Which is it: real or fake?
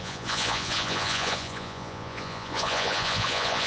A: fake